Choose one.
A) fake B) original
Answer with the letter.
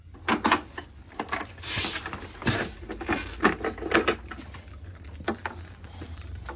B